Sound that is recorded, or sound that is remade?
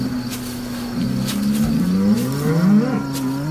recorded